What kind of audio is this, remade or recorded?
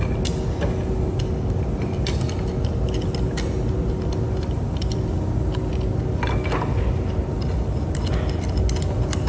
recorded